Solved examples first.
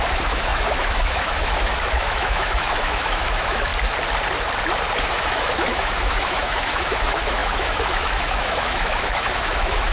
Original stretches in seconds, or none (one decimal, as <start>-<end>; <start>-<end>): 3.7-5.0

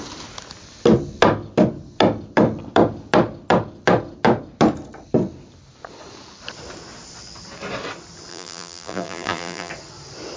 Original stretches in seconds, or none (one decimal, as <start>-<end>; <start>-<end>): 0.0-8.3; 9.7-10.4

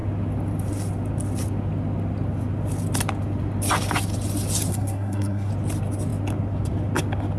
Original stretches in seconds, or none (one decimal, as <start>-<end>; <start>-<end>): 0.0-4.7; 5.5-7.4